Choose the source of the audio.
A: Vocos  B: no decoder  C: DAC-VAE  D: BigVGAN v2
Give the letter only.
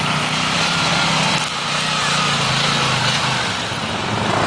B